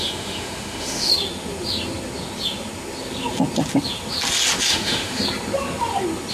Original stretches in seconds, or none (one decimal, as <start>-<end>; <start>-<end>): 1.1-4.7; 5.2-6.3